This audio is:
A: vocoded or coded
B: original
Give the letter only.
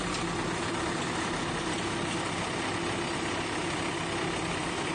B